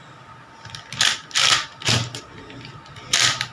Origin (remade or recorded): recorded